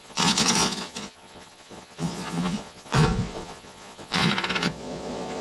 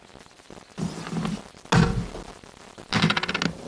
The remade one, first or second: first